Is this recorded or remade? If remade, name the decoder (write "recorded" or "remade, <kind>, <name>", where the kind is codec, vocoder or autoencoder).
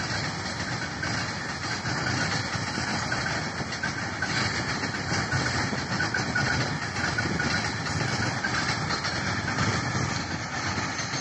recorded